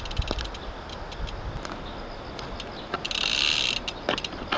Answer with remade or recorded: recorded